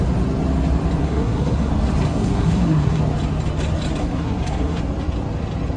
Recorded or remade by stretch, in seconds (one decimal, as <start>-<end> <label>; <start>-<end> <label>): 0.0-1.0 recorded; 1.0-1.7 remade; 1.7-2.1 recorded; 2.1-3.0 remade; 3.0-4.0 recorded; 4.0-4.8 remade; 4.8-5.8 recorded